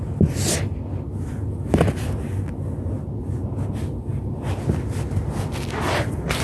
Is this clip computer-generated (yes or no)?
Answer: no